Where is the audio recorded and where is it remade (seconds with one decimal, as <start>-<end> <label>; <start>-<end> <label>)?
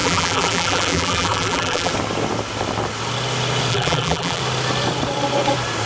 0.0-1.9 remade; 1.9-3.7 recorded; 3.7-4.4 remade; 4.4-5.9 recorded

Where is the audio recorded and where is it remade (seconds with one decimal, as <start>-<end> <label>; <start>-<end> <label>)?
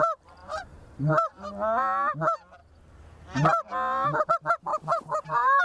0.0-0.4 recorded; 0.4-1.3 remade; 1.3-4.7 recorded; 4.7-5.6 remade